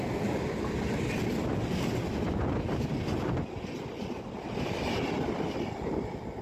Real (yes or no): yes